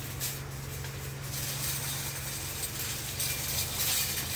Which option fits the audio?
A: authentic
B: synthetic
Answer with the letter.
A